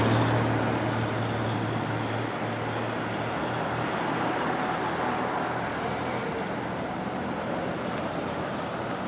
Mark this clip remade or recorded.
recorded